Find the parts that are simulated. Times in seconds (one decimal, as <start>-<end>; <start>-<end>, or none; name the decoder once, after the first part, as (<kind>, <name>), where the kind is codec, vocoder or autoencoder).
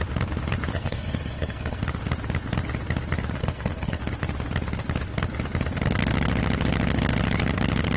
0.7-1.8 (codec, SNAC); 3.4-4.0